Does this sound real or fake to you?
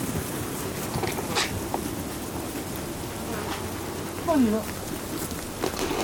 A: real